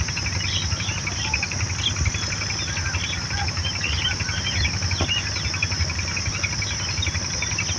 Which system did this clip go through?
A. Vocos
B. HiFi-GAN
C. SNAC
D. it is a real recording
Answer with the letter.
D